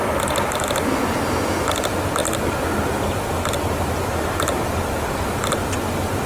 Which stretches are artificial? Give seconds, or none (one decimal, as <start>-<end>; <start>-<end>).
none